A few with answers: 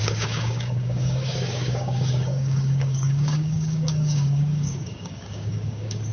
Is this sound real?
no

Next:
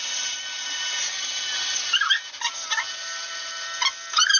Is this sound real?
yes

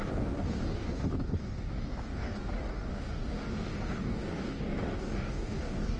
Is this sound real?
no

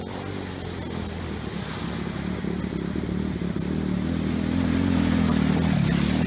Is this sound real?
yes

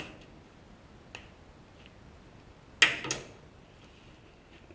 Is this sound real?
yes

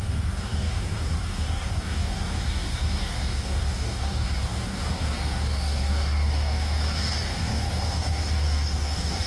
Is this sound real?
no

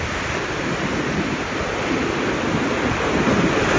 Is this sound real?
yes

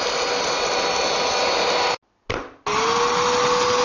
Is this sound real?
yes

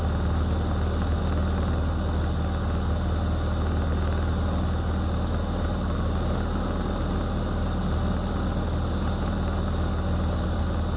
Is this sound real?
yes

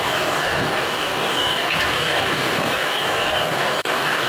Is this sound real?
no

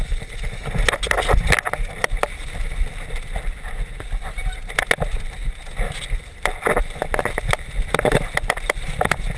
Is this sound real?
yes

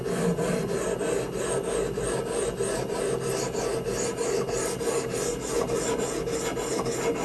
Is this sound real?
yes